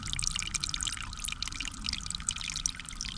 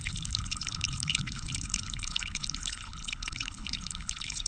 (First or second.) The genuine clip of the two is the first